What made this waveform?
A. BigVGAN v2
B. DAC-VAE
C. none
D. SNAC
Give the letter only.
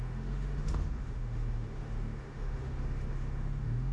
B